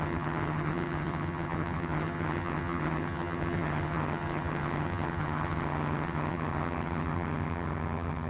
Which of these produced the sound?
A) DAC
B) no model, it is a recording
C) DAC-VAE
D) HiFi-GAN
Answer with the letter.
D